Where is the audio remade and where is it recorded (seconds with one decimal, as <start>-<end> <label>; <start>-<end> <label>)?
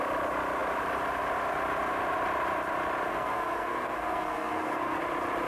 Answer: 0.0-3.1 recorded; 3.1-5.0 remade; 5.0-5.5 recorded